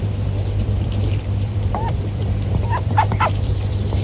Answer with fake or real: fake